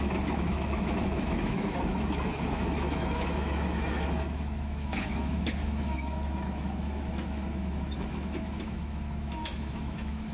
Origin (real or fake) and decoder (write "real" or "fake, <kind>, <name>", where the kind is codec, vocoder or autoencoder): fake, autoencoder, DAC-VAE